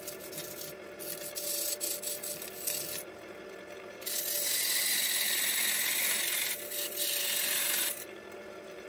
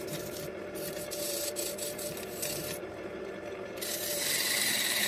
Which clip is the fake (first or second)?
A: second